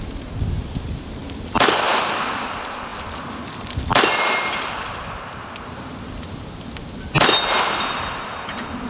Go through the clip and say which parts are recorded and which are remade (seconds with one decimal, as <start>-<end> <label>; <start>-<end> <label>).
0.0-8.9 recorded